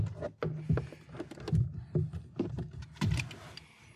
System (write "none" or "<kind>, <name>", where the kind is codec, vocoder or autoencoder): none